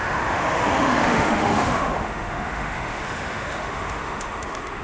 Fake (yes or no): yes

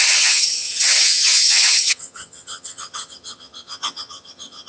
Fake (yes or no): yes